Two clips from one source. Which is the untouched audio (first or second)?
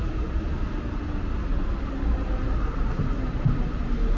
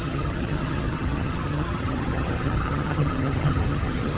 first